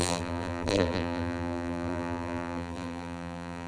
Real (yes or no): no